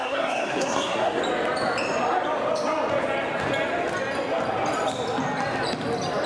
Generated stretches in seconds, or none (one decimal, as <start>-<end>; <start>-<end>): 0.0-1.2